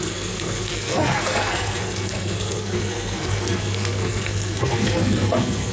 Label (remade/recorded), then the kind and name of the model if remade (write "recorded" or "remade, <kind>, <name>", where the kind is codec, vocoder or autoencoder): remade, codec, SNAC